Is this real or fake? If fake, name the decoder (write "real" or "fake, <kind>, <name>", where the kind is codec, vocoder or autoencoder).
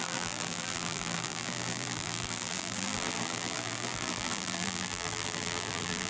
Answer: fake, vocoder, BigVGAN v2